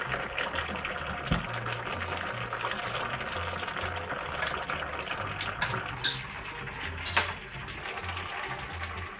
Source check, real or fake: real